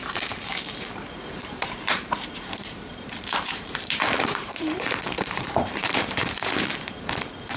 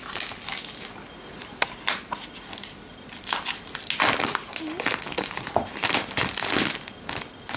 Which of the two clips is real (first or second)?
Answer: second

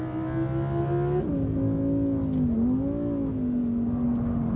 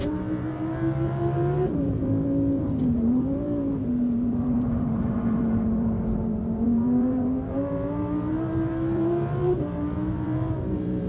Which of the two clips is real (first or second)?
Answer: first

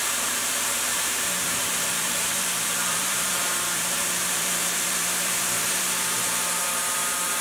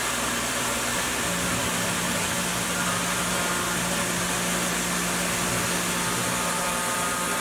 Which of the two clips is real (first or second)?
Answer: second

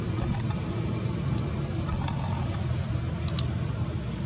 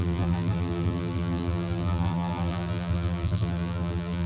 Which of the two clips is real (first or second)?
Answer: first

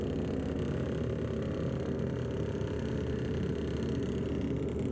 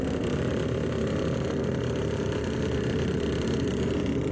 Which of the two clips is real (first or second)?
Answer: first